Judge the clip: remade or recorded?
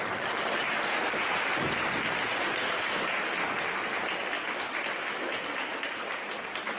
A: recorded